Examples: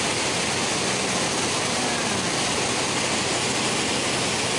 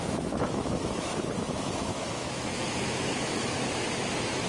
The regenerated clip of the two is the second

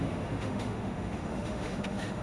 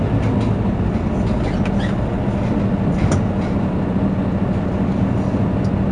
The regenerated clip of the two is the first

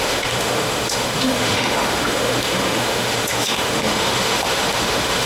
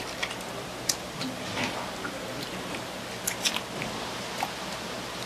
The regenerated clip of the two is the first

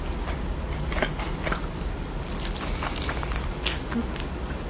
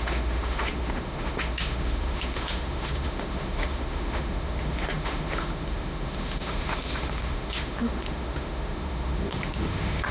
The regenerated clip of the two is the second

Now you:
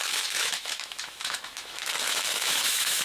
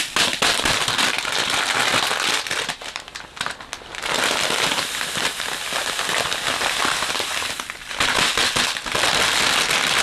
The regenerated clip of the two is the first